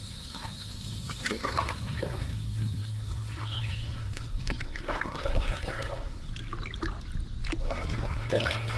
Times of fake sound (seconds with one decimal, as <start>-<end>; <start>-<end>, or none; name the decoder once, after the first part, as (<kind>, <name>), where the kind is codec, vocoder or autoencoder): 0.0-6.3 (codec, SNAC); 7.6-8.8